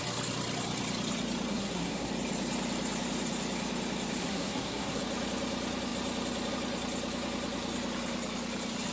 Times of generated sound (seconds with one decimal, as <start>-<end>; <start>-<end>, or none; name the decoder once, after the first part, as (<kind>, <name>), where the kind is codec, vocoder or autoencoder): 1.5-2.1 (codec, SNAC); 4.2-5.0